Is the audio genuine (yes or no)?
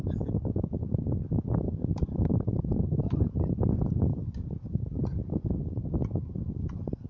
yes